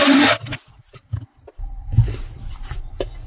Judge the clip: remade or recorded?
recorded